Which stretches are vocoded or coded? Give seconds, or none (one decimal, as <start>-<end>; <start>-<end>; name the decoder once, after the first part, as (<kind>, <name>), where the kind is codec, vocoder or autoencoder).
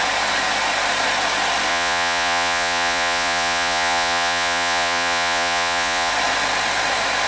1.7-6.1 (vocoder, Vocos)